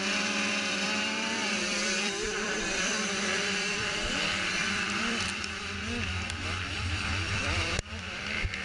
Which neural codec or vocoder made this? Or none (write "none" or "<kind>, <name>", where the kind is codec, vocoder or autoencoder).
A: vocoder, BigVGAN v2